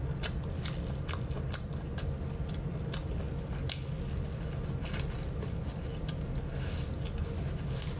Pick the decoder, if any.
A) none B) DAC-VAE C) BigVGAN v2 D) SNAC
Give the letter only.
A